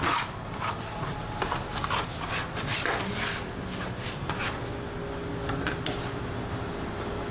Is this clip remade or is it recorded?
recorded